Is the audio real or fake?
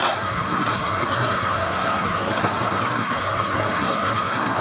fake